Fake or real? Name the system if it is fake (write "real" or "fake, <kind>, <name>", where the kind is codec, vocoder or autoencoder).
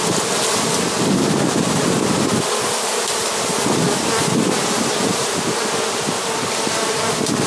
real